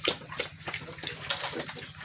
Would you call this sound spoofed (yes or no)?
no